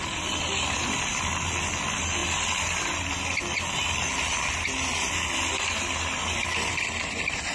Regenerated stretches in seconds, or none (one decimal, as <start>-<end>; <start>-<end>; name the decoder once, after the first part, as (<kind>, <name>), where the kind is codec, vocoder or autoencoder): none